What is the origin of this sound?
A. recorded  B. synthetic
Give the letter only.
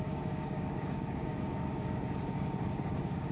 B